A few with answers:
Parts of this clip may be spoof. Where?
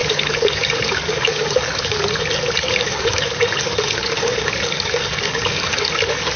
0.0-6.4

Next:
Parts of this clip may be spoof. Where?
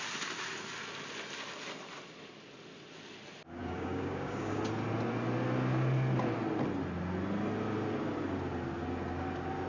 3.6-4.6